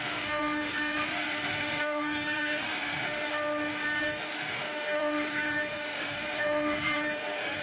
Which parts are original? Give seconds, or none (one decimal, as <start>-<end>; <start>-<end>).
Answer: 3.3-4.0